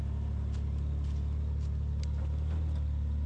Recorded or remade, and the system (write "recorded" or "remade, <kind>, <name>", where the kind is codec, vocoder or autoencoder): recorded